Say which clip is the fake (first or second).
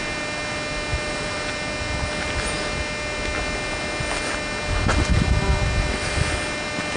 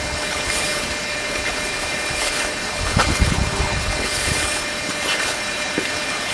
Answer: second